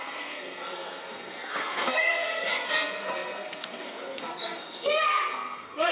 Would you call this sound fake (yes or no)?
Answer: yes